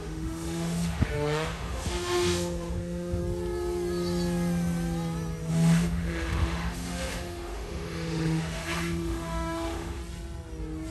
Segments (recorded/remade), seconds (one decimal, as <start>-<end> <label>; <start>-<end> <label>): 0.0-3.2 remade; 3.2-5.5 recorded; 5.5-10.0 remade; 10.0-10.9 recorded